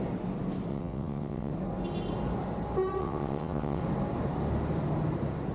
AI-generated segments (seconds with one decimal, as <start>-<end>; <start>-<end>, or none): 0.7-1.5; 3.0-3.8